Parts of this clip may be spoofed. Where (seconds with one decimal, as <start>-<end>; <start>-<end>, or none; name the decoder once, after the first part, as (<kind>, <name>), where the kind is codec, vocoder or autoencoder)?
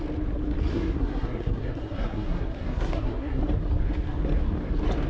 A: 0.7-3.4 (codec, SNAC)